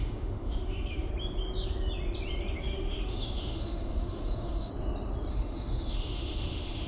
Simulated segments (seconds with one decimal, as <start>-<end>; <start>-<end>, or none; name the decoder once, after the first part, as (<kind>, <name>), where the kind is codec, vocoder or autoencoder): 0.0-1.1 (autoencoder, DAC-VAE); 2.6-4.7; 5.3-6.9